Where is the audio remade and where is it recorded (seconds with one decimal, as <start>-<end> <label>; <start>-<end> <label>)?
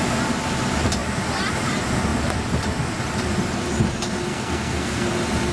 0.0-4.3 recorded; 4.3-5.1 remade; 5.1-5.5 recorded